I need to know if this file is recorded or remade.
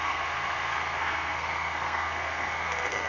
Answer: remade